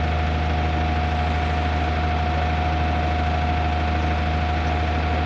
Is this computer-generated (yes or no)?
no